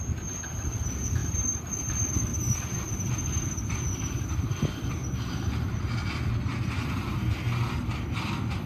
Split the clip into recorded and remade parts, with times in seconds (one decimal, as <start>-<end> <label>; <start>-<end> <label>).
0.0-1.2 recorded; 1.2-1.9 remade; 1.9-2.3 recorded; 2.3-3.1 remade; 3.1-5.0 recorded; 5.0-5.8 remade; 5.8-8.7 recorded